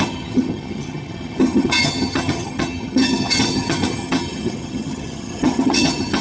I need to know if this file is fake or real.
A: fake